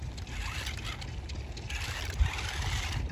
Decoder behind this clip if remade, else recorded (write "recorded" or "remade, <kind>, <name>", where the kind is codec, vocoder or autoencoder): recorded